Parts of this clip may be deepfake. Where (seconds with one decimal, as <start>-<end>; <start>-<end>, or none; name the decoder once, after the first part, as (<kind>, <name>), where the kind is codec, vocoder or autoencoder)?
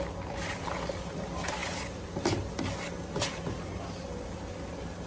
none